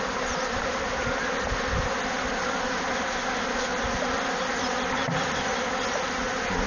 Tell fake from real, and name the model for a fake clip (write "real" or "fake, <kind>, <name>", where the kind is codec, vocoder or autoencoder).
real